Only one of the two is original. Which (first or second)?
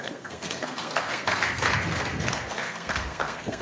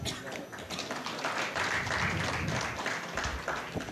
second